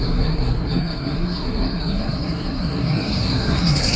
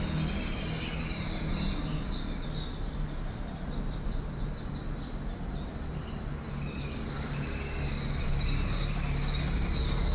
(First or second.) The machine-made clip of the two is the first